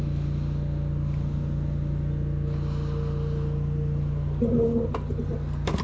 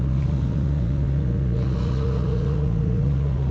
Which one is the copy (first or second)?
second